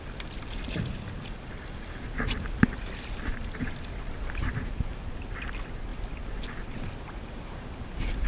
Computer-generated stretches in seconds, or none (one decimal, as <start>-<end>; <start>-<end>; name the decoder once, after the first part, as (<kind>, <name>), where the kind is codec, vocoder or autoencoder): none